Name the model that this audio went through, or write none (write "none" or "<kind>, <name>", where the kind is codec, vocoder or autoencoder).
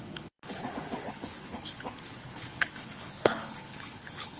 codec, HILCodec